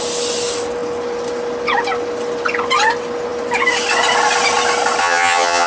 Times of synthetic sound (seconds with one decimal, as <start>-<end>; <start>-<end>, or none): 5.0-5.7